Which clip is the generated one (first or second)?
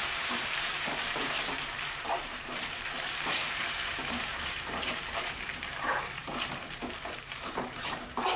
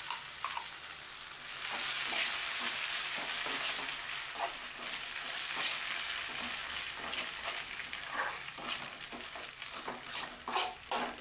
first